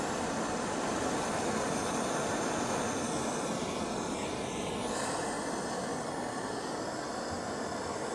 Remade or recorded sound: recorded